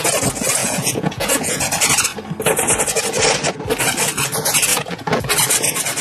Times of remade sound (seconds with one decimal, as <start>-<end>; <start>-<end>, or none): 0.6-1.6; 4.7-5.3